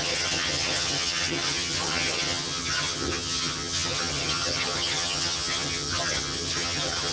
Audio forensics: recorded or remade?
remade